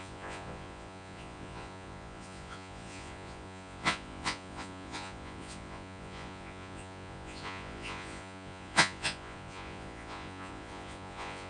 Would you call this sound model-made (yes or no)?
yes